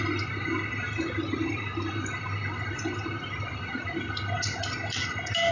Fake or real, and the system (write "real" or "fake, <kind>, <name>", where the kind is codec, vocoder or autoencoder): real